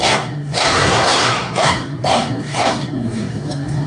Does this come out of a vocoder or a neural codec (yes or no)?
yes